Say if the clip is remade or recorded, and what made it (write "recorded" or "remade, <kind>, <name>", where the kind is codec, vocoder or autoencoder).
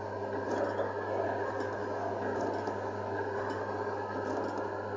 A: recorded